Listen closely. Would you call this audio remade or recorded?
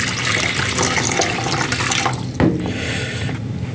recorded